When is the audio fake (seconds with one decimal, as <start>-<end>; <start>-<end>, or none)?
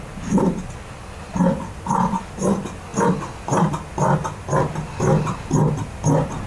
none